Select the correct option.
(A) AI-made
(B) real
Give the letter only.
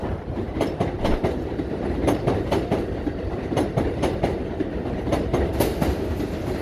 A